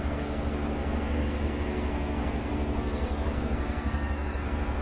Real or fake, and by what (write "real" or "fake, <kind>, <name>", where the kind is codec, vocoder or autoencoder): fake, codec, SNAC